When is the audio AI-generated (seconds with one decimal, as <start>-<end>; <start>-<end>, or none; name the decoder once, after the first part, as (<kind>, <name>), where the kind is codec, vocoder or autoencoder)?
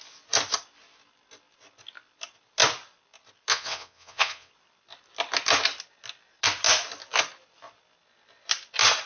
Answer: 3.5-4.5 (vocoder, WaveNeXt)